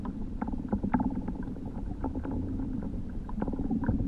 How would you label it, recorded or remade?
remade